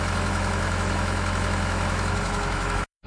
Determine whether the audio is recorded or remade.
remade